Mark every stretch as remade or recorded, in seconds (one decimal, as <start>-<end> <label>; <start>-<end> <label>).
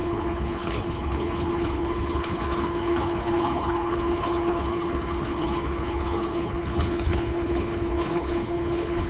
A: 0.0-9.1 remade